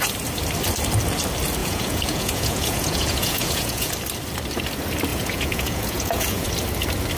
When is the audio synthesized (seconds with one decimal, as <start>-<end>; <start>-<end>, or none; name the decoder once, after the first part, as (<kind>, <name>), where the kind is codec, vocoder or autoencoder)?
1.6-3.9 (vocoder, Vocos); 5.1-6.5